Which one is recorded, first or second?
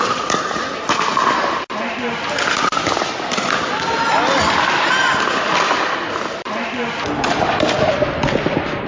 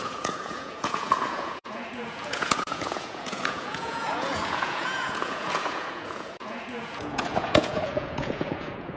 first